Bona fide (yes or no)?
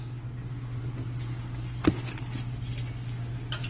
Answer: yes